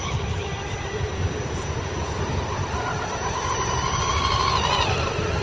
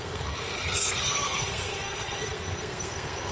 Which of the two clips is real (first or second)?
first